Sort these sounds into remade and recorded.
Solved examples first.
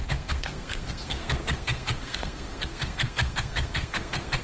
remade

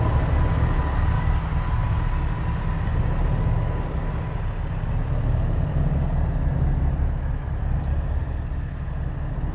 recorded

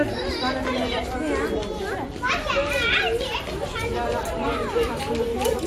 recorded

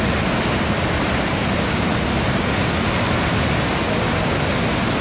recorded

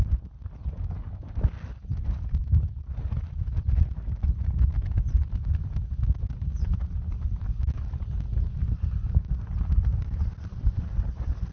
recorded